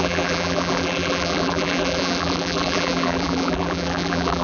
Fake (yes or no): yes